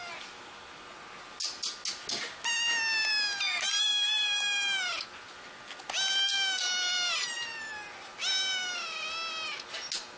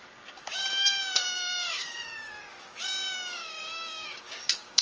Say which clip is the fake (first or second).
second